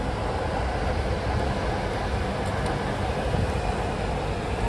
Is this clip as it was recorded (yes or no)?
yes